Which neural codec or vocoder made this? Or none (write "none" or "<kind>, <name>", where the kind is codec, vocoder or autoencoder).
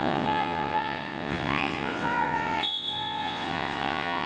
vocoder, WaveNeXt